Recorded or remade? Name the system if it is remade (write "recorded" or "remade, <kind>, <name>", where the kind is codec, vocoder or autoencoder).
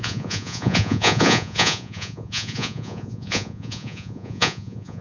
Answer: remade, vocoder, Vocos